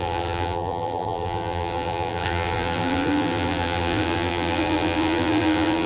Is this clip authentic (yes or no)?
no